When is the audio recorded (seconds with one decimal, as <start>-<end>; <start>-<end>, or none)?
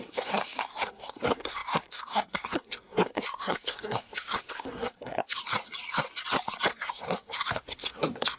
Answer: 5.4-6.7